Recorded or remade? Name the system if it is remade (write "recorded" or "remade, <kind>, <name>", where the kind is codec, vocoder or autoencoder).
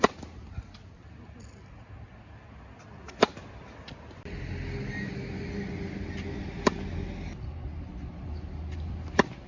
recorded